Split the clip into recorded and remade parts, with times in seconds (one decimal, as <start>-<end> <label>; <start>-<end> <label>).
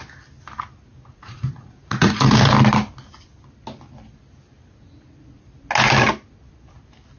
0.0-0.9 recorded; 0.9-2.2 remade; 2.2-7.2 recorded